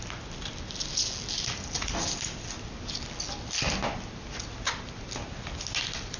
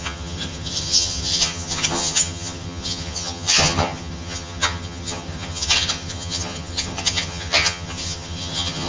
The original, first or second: first